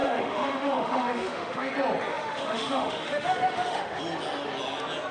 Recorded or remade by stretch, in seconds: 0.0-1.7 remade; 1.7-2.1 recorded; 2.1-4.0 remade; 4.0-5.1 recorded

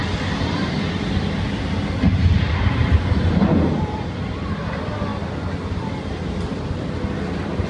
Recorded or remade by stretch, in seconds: 0.0-7.7 recorded

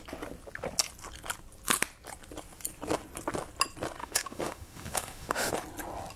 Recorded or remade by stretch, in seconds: 0.0-4.0 recorded; 4.0-5.5 remade; 5.5-6.2 recorded

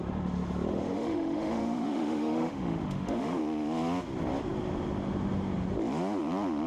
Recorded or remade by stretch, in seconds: 0.0-0.7 recorded; 0.7-3.4 remade; 3.4-6.7 recorded